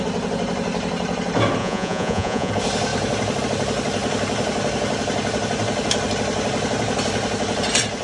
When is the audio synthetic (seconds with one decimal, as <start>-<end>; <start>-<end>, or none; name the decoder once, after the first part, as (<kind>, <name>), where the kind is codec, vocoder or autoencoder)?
1.6-2.5 (vocoder, Vocos)